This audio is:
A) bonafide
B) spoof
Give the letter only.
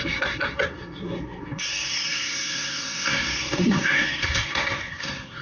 B